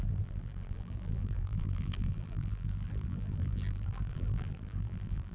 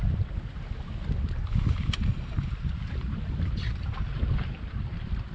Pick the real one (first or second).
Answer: second